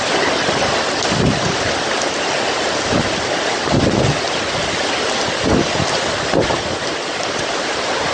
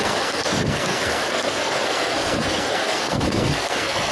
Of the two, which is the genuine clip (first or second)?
first